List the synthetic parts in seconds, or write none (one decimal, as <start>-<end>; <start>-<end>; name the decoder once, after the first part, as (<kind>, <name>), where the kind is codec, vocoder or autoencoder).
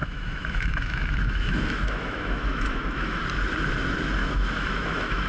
0.0-3.2 (autoencoder, DAC-VAE); 4.2-5.3